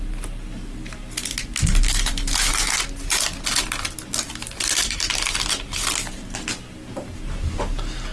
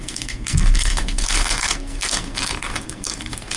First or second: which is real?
first